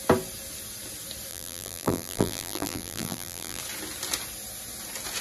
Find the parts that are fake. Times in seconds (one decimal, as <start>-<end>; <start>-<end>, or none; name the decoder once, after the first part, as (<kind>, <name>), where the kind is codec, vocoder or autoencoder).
1.3-3.6 (vocoder, BigVGAN v2)